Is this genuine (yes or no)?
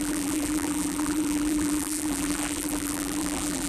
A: no